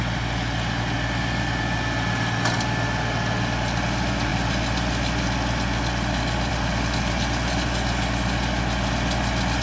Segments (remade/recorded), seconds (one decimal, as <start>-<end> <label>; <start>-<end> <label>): 0.0-9.6 recorded